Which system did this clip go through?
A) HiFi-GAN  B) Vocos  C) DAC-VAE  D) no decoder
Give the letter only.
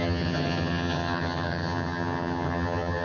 A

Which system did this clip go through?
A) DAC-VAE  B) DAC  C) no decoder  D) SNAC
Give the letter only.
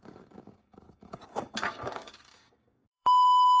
B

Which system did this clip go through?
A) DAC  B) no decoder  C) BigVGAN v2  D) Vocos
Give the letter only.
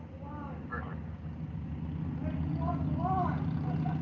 B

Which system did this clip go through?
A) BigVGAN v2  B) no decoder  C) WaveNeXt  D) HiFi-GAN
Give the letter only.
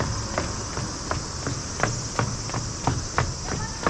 B